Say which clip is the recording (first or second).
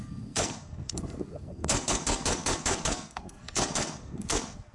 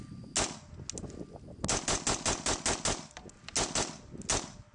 second